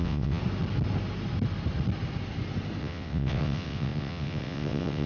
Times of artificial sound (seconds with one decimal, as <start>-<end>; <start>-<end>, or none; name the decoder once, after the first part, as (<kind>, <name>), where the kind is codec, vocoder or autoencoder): 0.0-0.4 (vocoder, WaveNeXt); 2.8-5.1